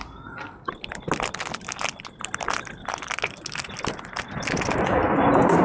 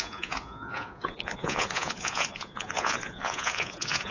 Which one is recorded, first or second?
first